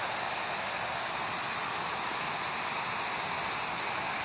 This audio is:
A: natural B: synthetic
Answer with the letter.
A